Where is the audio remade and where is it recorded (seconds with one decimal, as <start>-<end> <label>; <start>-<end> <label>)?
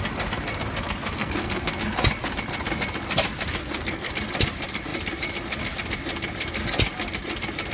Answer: 0.0-1.2 recorded; 1.2-1.7 remade; 1.7-3.6 recorded; 3.6-4.1 remade; 4.1-7.7 recorded